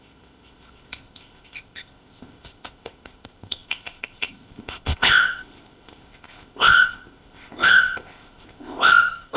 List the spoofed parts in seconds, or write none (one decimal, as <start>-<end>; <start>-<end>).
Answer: 0.0-9.4